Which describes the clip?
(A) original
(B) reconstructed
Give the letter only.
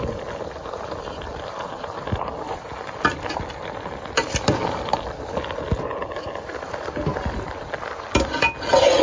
A